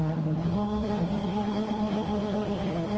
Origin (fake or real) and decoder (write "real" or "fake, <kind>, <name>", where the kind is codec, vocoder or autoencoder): fake, codec, SNAC